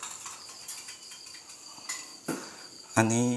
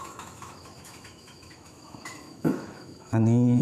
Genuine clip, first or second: first